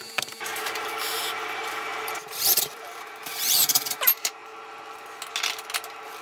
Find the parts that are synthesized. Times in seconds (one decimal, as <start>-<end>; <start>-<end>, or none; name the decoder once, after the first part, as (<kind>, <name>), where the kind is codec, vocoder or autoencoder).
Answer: 0.0-4.4 (vocoder, BigVGAN v2)